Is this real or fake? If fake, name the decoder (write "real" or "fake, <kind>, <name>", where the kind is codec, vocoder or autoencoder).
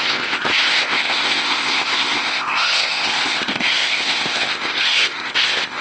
fake, codec, ZipCodec